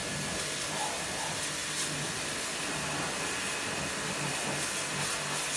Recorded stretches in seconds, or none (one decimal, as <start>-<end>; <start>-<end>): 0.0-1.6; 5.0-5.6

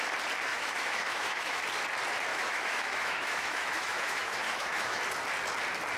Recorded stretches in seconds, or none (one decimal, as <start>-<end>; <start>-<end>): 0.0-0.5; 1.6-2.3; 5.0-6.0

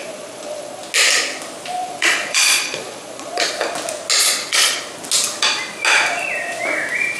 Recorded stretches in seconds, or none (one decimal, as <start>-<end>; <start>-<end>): 0.8-1.8; 3.5-4.2; 4.8-7.2